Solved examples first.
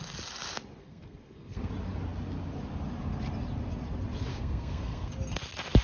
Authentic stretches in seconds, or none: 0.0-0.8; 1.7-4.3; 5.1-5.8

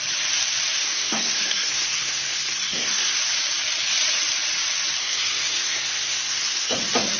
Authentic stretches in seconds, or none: 0.0-0.8; 3.2-5.0; 6.8-7.2

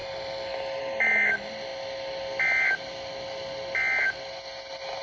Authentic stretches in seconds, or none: 0.0-5.0

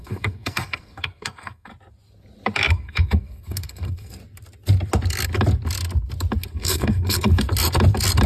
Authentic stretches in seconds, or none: 1.7-2.7; 4.2-6.5; 7.3-8.3

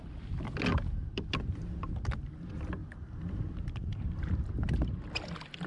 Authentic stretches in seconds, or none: 0.0-5.7

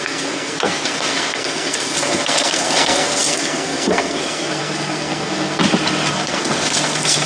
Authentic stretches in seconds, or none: 5.6-6.1

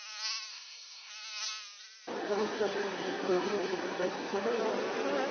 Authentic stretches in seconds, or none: 0.0-0.5; 1.1-2.2; 4.6-5.3